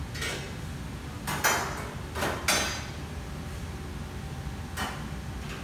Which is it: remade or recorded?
recorded